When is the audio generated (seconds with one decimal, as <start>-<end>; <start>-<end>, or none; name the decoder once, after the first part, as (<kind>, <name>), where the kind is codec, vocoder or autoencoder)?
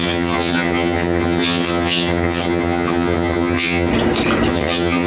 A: 0.0-3.9 (vocoder, HiFi-GAN); 4.5-5.1